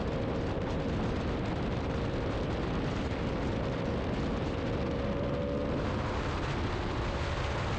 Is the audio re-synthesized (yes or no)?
no